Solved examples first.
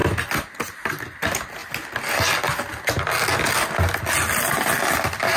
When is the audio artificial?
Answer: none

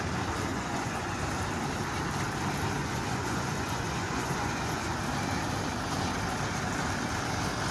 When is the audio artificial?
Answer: 0.5-1.2 (vocoder, Vocos); 2.8-5.0

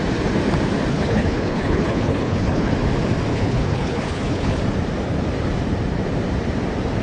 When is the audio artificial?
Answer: 0.9-2.7 (codec, HILCodec); 3.3-4.6

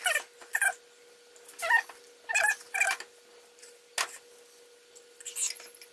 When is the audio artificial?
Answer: none

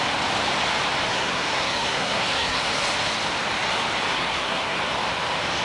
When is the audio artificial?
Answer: 1.1-2.6 (codec, SNAC); 4.1-4.8